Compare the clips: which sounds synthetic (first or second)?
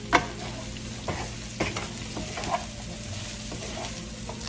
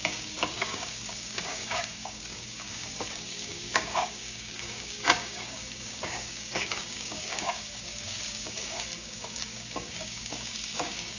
second